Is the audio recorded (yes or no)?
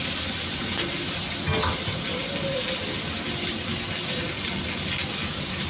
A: yes